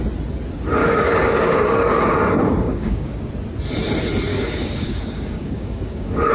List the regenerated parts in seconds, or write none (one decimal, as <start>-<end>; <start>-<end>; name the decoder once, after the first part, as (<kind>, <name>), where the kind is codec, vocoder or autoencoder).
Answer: 0.8-3.3 (codec, DAC); 4.3-6.3